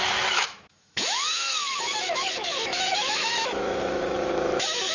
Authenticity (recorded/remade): remade